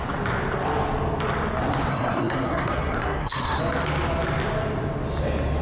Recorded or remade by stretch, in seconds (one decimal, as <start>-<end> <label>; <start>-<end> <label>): 0.0-1.9 recorded; 1.9-3.6 remade; 3.6-5.6 recorded